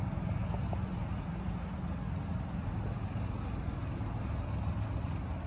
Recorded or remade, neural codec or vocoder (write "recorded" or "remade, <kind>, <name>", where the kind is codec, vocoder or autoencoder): recorded